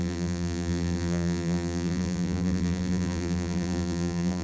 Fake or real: fake